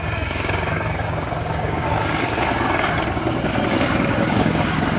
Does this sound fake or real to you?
fake